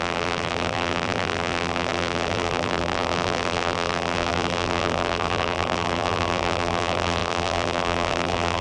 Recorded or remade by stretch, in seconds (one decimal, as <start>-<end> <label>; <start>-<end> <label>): 0.0-8.6 remade